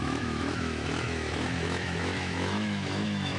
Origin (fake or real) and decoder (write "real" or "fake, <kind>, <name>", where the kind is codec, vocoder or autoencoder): fake, autoencoder, DAC-VAE